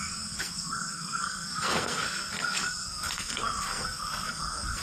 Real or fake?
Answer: fake